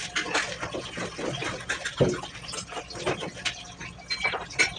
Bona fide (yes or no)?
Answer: yes